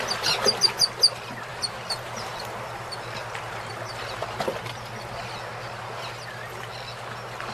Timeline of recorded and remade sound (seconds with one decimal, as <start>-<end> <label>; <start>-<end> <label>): 0.0-1.5 recorded; 1.5-2.4 remade; 2.4-7.5 recorded